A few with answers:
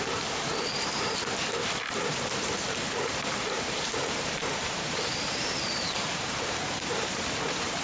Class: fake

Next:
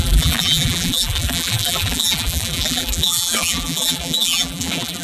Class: fake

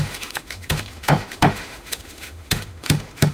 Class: fake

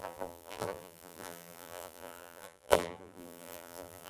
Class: fake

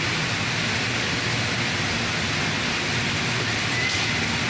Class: real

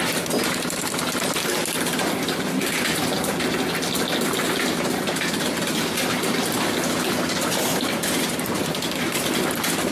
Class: real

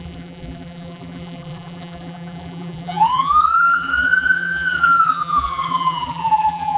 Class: fake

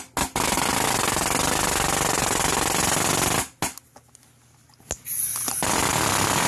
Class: real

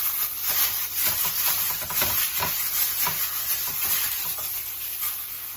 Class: real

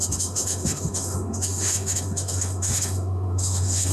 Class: fake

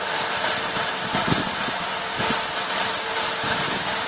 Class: real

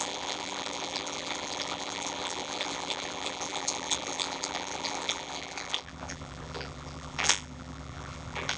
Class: fake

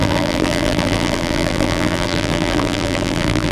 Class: fake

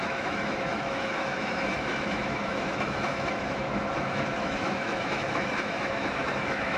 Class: fake